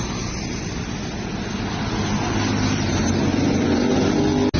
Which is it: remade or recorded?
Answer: recorded